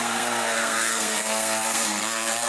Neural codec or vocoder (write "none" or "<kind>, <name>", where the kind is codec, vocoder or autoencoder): codec, SNAC